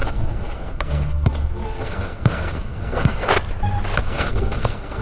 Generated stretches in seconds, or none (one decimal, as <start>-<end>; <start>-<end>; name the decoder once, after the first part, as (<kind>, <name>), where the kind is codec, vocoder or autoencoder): 0.0-3.3 (codec, SNAC); 4.0-5.0